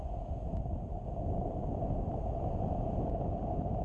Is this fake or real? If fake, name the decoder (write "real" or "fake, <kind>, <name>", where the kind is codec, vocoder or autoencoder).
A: real